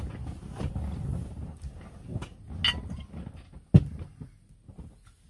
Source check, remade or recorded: recorded